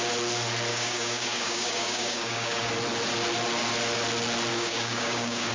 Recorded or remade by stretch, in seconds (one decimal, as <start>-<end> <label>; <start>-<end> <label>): 0.0-0.7 recorded; 0.7-2.7 remade; 2.7-4.5 recorded; 4.5-5.5 remade